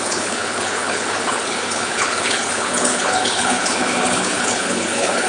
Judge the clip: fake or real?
fake